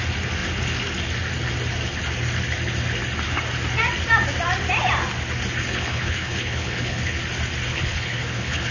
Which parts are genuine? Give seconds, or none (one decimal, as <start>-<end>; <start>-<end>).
0.0-5.6; 7.2-7.7

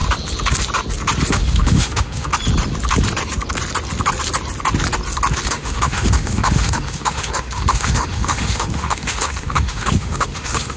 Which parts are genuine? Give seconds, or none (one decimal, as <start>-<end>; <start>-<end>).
0.0-1.3; 2.3-5.5

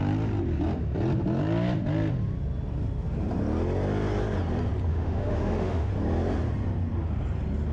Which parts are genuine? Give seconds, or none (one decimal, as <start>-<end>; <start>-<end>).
0.0-4.9; 5.9-7.7

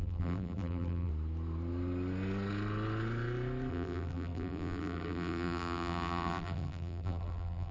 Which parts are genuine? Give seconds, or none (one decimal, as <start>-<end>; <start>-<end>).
1.1-3.7

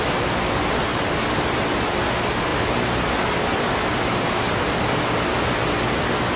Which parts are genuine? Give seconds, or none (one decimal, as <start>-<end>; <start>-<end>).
0.0-6.4

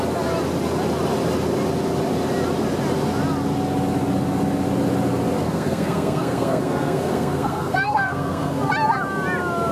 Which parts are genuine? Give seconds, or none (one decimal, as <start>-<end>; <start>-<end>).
0.0-5.4; 8.7-9.7

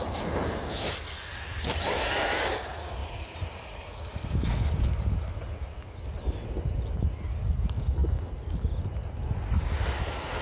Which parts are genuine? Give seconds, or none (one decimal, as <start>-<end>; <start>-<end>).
0.0-10.4